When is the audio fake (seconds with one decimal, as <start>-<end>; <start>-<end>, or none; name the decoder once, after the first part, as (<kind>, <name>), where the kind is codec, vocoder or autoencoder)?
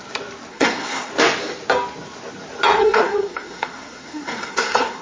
0.5-1.1 (codec, SNAC); 2.8-5.0